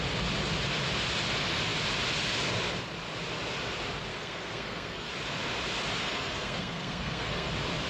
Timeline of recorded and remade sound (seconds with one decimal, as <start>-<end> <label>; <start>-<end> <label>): 0.0-4.1 recorded; 4.1-5.1 remade; 5.1-6.0 recorded; 6.0-7.5 remade; 7.5-7.9 recorded